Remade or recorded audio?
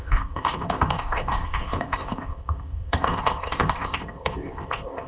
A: remade